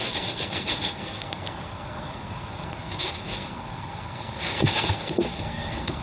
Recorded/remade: remade